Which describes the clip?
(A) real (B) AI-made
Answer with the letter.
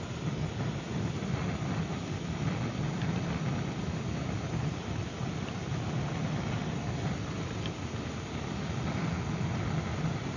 A